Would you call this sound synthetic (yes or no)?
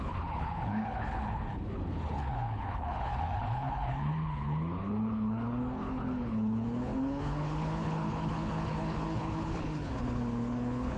yes